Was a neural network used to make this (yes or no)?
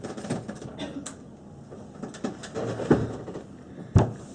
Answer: no